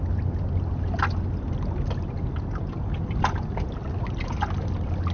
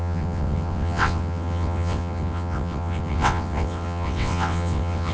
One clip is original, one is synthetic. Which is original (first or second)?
first